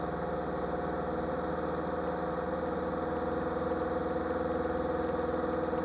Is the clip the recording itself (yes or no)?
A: yes